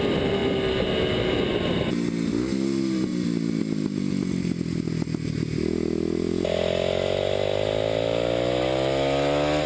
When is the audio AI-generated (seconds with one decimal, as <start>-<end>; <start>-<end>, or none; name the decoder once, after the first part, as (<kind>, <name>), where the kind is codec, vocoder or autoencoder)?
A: none

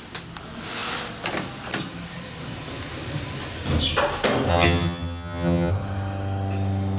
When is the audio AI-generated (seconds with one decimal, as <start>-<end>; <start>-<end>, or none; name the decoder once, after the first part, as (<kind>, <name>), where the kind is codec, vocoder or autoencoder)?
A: 4.5-5.7 (vocoder, HiFi-GAN)

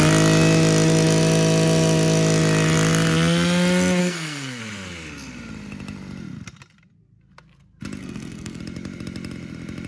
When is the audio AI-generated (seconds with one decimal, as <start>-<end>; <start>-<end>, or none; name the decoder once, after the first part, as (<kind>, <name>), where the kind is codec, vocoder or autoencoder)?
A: 4.0-4.6 (codec, SNAC); 8.0-8.6

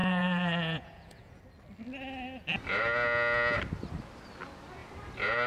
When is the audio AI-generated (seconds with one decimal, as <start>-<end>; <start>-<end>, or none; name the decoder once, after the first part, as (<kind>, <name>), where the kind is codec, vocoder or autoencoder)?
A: 0.0-1.4 (vocoder, Vocos)

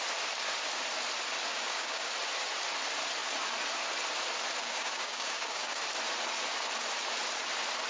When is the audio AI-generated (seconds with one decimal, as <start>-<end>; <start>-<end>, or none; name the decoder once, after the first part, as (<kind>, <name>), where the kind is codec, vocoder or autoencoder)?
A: 1.5-2.1 (codec, DAC); 4.6-5.8